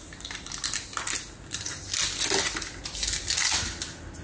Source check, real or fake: real